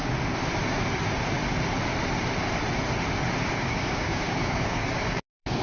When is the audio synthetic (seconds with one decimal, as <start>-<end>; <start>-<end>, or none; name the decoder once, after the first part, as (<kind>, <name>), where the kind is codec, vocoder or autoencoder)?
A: 3.4-5.6 (codec, DAC)